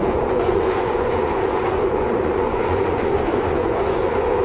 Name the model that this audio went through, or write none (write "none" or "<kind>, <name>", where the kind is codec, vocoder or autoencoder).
vocoder, Vocos